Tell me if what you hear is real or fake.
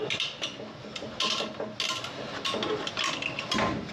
real